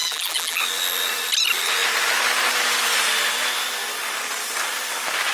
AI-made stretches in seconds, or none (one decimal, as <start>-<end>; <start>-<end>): 0.0-0.6